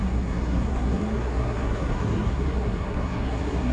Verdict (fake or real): fake